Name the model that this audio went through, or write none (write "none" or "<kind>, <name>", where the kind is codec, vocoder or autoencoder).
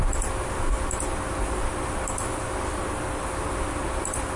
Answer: none